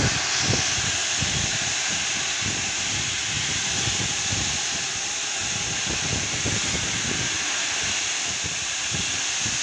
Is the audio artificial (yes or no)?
no